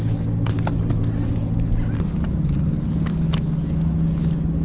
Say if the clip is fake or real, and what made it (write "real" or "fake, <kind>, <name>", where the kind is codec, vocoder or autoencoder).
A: real